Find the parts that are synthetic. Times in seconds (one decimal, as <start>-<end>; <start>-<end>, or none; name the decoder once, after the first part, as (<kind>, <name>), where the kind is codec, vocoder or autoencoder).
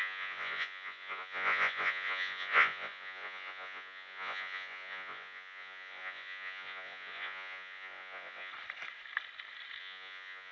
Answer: 0.0-8.5 (vocoder, Vocos); 9.8-10.5